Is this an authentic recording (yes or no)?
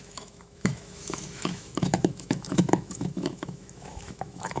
no